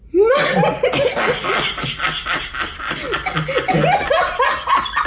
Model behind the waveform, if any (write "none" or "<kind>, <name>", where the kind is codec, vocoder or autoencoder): none